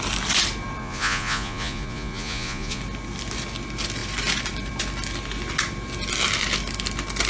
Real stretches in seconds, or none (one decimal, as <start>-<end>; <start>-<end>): 0.0-0.8; 2.8-7.3